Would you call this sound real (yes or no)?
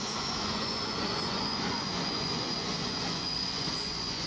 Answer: no